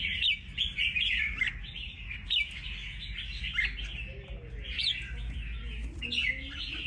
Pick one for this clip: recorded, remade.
recorded